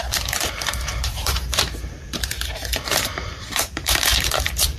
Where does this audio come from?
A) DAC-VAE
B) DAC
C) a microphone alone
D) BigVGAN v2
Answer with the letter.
D